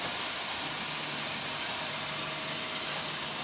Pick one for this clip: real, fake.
real